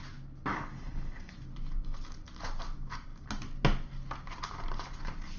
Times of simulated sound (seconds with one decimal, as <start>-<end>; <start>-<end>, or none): 0.5-1.3

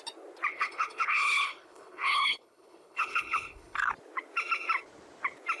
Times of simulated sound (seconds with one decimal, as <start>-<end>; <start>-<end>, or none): 0.5-3.9

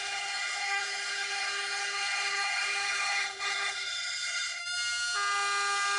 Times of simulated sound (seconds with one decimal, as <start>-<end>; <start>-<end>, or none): 0.0-4.6